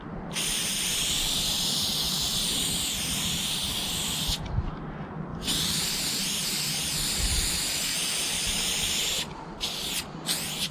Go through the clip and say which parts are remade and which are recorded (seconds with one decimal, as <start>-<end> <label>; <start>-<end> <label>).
0.0-5.3 recorded; 5.3-6.0 remade; 6.0-10.7 recorded